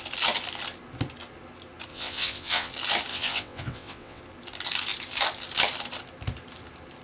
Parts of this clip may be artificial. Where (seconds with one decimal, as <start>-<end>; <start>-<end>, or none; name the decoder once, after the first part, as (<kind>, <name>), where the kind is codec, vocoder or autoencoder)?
1.9-2.7 (vocoder, WaveNeXt); 3.1-4.2